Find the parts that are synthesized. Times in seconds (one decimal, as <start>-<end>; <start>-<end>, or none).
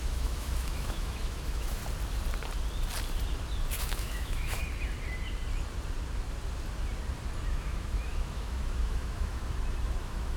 0.0-1.8; 3.8-4.6; 7.5-9.4; 10.0-10.4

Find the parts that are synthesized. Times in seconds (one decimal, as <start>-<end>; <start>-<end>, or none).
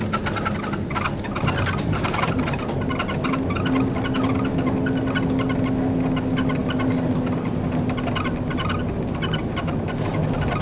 none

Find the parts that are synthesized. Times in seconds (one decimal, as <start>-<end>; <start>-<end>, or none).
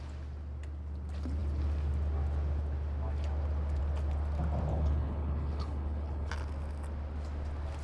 4.7-6.3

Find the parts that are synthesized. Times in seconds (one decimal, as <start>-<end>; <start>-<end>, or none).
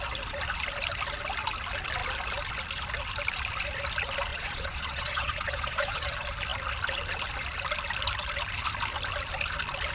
4.3-6.1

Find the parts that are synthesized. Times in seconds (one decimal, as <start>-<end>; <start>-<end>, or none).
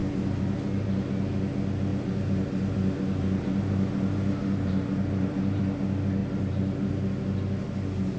0.0-1.1; 1.9-5.6; 6.2-6.9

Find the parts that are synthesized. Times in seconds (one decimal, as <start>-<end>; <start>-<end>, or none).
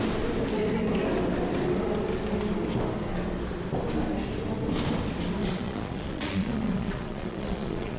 5.4-8.0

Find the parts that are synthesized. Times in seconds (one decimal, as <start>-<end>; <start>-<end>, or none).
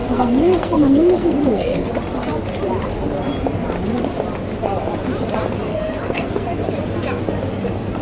0.0-1.9; 5.7-6.5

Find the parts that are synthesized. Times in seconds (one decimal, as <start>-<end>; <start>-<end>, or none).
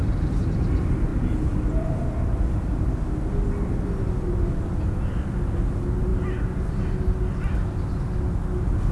none